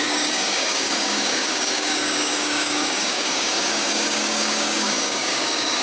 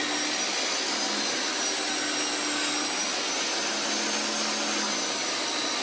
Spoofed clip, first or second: first